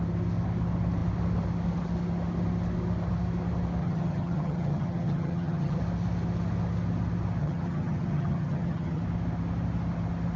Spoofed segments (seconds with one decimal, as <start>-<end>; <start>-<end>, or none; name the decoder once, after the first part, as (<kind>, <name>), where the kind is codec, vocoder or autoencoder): 3.8-5.8 (vocoder, HiFi-GAN); 7.4-9.0